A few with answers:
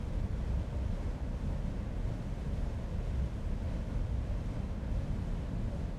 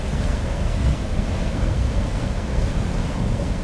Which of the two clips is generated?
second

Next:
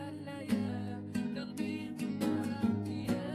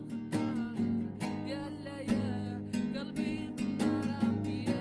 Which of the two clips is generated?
first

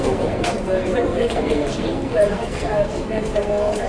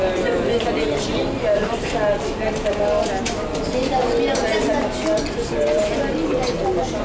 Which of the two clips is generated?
first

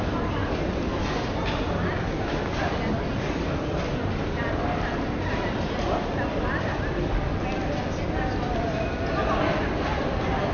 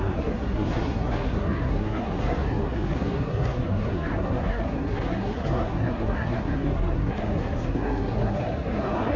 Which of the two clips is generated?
second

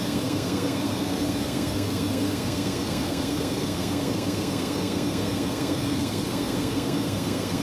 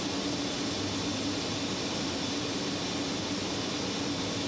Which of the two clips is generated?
first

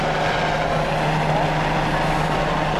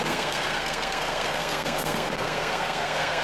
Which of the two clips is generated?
second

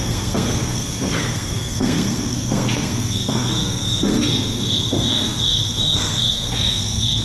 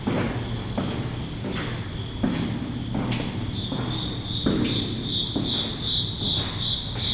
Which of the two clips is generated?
first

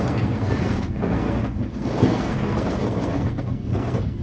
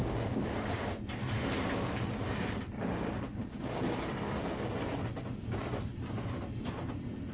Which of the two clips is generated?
first